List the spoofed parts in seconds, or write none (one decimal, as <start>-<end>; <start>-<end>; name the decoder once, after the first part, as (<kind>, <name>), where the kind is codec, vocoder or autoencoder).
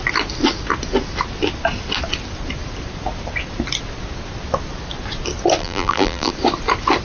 5.6-6.3 (vocoder, BigVGAN v2)